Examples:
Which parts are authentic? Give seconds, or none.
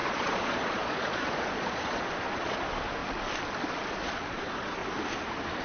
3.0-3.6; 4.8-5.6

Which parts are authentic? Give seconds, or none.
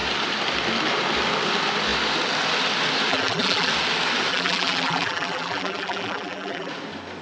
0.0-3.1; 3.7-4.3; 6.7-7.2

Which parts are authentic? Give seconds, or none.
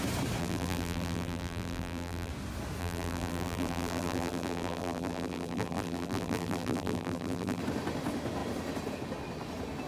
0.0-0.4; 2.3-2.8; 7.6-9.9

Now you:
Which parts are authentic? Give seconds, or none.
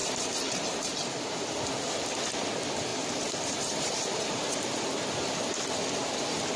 1.6-2.9; 4.4-6.6